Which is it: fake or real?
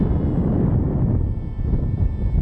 real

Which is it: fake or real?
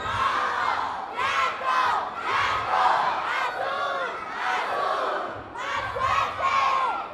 real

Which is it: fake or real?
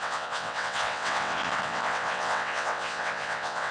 fake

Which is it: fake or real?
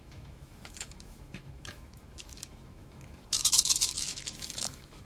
fake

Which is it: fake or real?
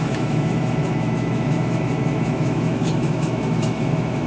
fake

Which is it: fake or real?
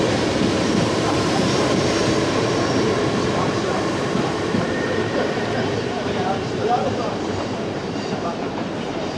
fake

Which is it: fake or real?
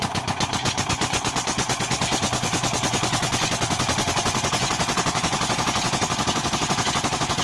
fake